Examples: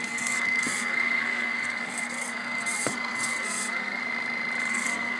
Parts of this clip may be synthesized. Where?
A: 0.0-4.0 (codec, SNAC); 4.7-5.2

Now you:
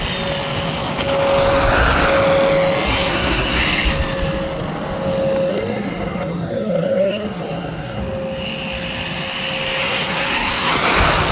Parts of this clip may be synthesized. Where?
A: 2.9-3.6 (codec, SNAC); 5.5-8.0; 9.8-10.7

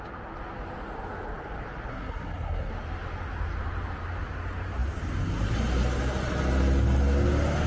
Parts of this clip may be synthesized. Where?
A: 1.9-2.7 (codec, SNAC)

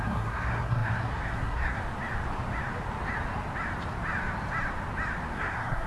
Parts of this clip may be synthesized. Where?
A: 0.0-1.8 (codec, SNAC); 5.3-5.9